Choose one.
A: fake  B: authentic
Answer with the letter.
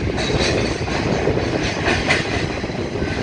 B